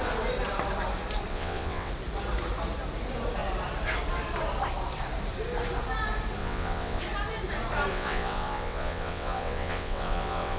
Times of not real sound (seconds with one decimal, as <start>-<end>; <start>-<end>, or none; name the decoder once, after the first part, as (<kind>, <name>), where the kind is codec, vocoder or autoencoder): 1.3-1.9 (vocoder, WaveNeXt); 6.4-7.0; 7.9-10.6